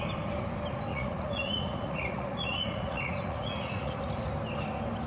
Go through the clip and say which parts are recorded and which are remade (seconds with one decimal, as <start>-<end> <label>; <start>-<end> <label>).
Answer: 0.0-0.9 recorded; 0.9-4.0 remade; 4.0-5.1 recorded